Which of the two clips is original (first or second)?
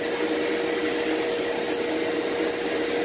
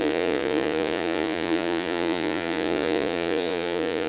first